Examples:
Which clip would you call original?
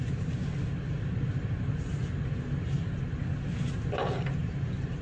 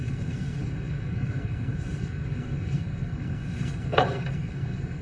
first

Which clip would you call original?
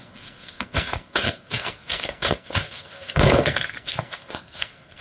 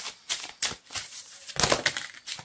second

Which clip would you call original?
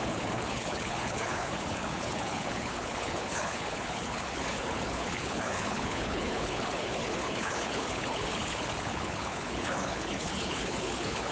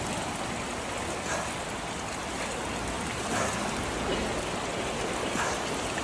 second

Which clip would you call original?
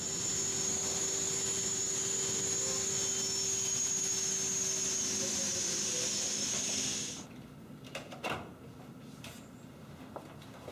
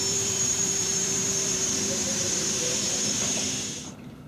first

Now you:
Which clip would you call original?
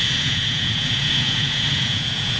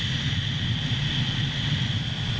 second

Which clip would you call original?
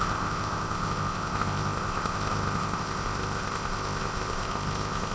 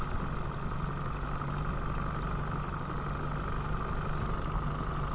second